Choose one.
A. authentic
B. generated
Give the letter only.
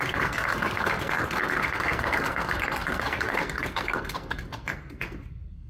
B